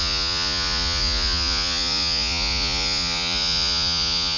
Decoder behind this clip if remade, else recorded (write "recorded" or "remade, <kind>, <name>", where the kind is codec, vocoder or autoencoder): remade, vocoder, Vocos